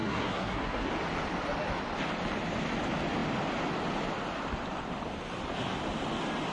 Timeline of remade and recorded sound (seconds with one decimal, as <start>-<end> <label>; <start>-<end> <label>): 0.0-0.9 remade; 0.9-6.5 recorded